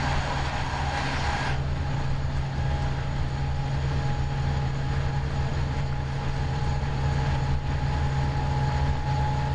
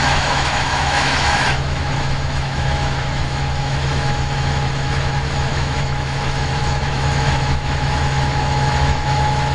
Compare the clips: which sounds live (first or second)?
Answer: first